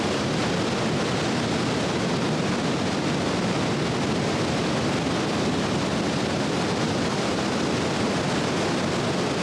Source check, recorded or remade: recorded